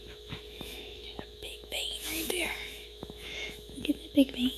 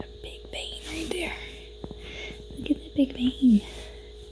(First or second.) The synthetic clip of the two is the first